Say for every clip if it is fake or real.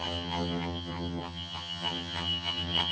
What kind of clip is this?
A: fake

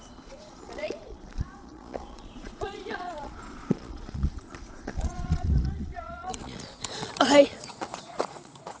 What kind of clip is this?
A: fake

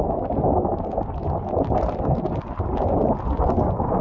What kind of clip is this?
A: real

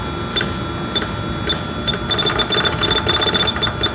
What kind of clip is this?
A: real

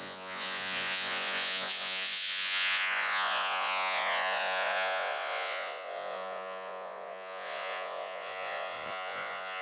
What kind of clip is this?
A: fake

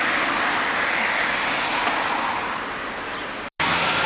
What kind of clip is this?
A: real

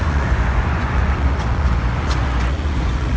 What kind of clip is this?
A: fake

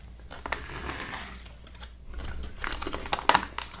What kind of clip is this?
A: real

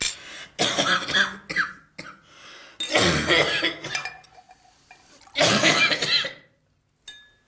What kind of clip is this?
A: real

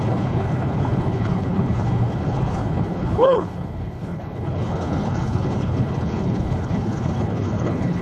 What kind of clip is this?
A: fake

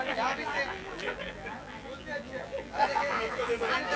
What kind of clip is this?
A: fake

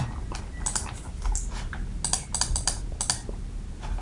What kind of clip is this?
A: real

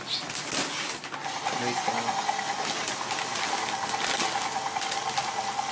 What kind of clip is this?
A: real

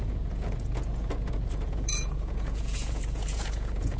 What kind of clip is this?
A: fake